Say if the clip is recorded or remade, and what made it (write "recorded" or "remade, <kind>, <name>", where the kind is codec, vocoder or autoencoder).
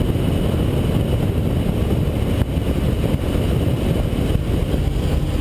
recorded